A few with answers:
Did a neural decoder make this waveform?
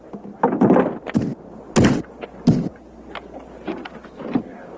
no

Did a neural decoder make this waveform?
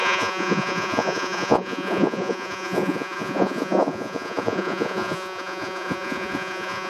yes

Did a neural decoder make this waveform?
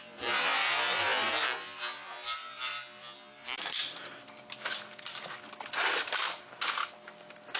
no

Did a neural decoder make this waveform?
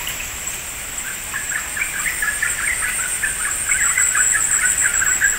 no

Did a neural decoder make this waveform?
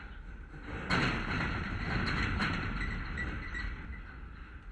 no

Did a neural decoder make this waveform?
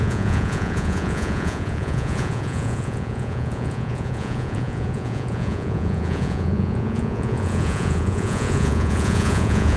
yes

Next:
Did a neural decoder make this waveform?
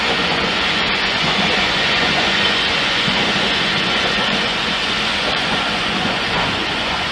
yes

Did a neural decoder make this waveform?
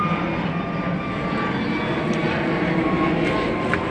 no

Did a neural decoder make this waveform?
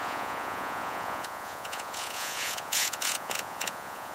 yes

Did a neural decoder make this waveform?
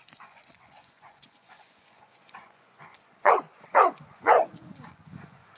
yes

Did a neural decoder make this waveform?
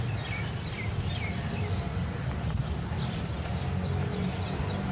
no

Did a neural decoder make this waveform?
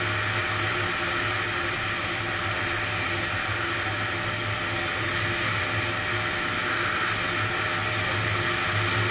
no